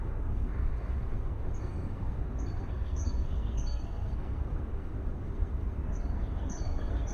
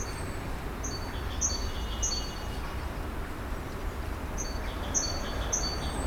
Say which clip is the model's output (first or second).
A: first